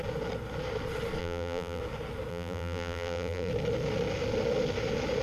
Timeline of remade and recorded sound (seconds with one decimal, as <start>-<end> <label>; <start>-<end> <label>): 0.0-1.2 recorded; 1.2-1.8 remade; 1.8-2.3 recorded; 2.3-3.5 remade; 3.5-5.2 recorded